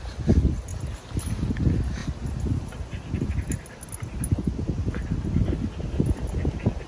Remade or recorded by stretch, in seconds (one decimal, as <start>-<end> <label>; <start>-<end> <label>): 0.0-6.9 recorded